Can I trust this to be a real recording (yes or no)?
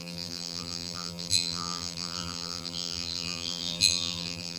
no